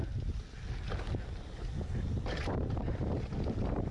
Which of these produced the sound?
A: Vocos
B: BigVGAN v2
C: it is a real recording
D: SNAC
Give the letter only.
C